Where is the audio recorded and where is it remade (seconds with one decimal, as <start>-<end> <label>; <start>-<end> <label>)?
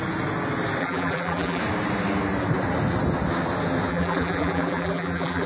0.0-0.8 recorded; 0.8-1.6 remade; 1.6-3.9 recorded; 3.9-5.5 remade